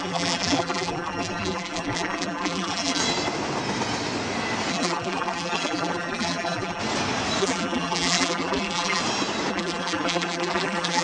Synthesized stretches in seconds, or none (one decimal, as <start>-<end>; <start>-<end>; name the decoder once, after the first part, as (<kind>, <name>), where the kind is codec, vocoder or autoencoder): 0.0-3.0 (vocoder, BigVGAN v2); 4.7-6.8; 7.4-9.0; 9.5-11.0